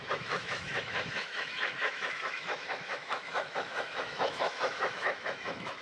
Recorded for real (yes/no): no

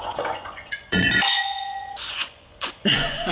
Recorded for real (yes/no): no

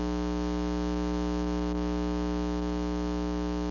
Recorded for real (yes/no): yes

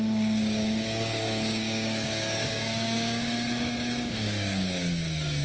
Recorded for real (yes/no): no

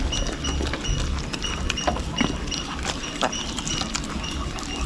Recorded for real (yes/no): yes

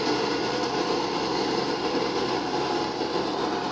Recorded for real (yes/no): no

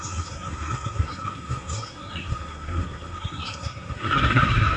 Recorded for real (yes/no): no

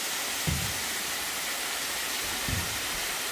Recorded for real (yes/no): yes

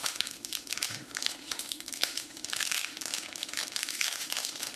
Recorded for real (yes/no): no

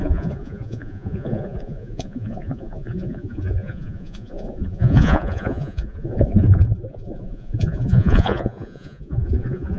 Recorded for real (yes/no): no